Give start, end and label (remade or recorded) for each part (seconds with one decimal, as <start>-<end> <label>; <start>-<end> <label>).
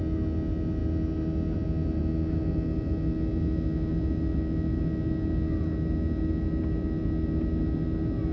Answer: 0.0-8.3 recorded